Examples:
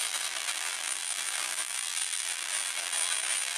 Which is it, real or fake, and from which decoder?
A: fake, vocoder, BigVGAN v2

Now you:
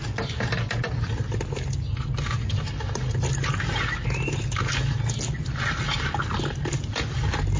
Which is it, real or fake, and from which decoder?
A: real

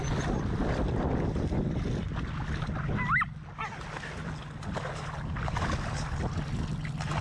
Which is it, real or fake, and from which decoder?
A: real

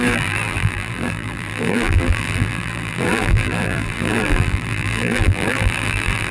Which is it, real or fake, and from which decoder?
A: fake, vocoder, BigVGAN v2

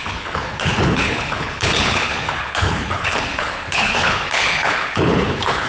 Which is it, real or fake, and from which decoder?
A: fake, codec, HILCodec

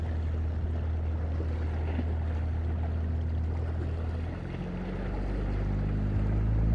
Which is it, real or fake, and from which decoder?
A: real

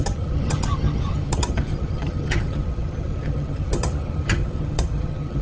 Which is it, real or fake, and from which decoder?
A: fake, vocoder, HiFi-GAN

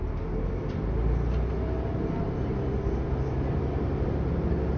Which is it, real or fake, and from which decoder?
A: real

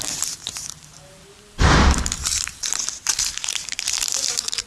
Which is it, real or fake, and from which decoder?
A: fake, vocoder, BigVGAN v2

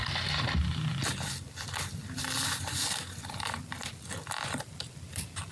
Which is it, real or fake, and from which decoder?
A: real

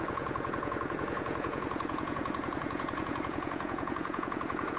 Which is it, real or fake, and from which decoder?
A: fake, vocoder, Vocos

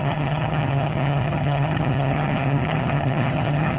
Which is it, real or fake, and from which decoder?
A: fake, vocoder, HiFi-GAN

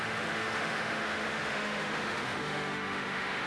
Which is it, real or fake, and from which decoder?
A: fake, autoencoder, DAC-VAE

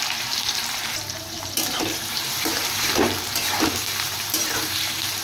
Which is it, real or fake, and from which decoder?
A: fake, vocoder, BigVGAN v2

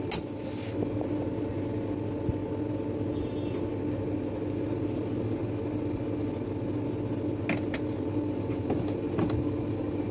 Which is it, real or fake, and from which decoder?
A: real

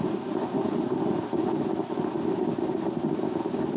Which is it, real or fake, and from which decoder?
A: real